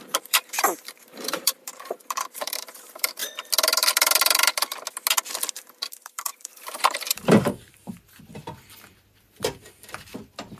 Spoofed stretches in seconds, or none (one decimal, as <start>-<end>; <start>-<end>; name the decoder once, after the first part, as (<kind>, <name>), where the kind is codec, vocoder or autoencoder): 0.0-3.2 (vocoder, BigVGAN v2); 5.5-8.4